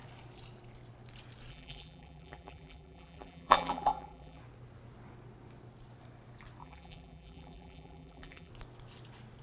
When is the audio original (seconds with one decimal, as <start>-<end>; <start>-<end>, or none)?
0.0-1.5; 4.4-6.6; 8.5-9.4